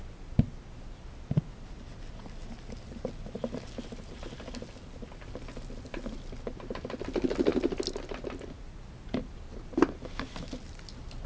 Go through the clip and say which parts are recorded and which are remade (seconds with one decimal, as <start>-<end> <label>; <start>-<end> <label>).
0.0-11.3 recorded